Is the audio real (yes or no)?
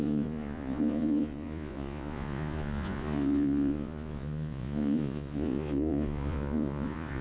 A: no